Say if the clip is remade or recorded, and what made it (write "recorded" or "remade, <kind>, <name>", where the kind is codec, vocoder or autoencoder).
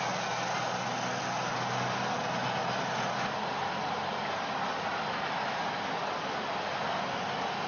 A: recorded